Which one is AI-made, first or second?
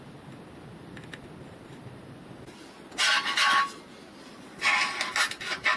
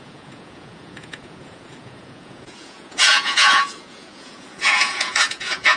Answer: second